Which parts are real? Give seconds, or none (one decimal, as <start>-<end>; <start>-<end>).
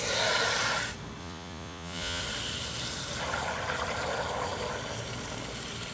0.0-1.2; 2.2-5.9